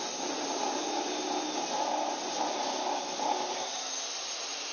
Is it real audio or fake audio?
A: real